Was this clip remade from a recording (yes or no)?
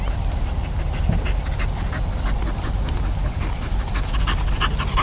no